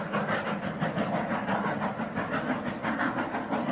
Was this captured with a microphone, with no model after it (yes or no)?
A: yes